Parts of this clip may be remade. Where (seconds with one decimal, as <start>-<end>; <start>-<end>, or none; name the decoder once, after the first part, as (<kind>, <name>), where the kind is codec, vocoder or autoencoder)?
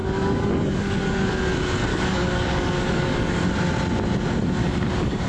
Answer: 0.0-1.3 (codec, DAC); 1.9-3.5; 4.6-5.3